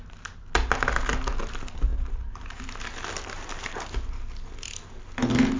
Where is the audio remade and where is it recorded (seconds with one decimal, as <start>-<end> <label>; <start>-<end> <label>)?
0.0-5.6 recorded